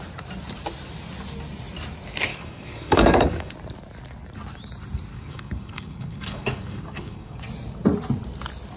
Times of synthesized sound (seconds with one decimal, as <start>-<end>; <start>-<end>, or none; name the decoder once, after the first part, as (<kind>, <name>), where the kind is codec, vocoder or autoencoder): 2.3-3.5 (codec, DAC); 5.1-7.4